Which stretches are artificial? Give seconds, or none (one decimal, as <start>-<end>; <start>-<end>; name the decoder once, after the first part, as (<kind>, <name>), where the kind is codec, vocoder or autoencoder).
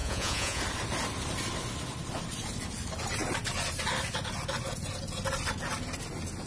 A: 0.0-0.6 (vocoder, Vocos)